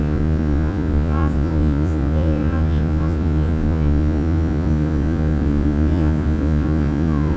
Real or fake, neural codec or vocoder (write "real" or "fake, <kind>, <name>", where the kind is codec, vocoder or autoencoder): fake, vocoder, Vocos